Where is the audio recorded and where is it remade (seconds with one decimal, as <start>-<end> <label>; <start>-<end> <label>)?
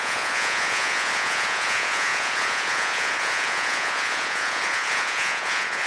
0.0-5.9 remade